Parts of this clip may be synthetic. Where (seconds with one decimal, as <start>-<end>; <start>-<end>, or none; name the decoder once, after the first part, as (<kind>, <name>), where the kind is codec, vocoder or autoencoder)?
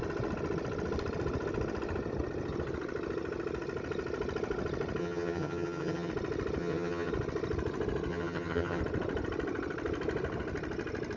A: 5.0-6.1 (vocoder, HiFi-GAN); 6.6-7.1; 8.1-8.8